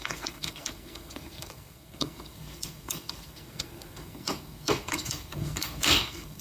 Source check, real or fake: fake